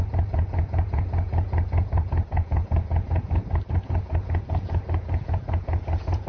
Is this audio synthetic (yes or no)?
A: yes